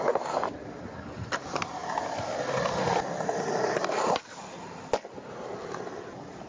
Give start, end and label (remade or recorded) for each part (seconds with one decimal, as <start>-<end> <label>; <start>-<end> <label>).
0.0-6.5 recorded